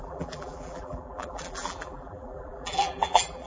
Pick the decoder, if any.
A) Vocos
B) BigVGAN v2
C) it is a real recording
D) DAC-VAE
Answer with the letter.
B